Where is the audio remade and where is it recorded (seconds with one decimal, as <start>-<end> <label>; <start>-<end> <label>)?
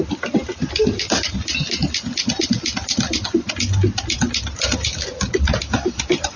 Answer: 0.0-6.4 recorded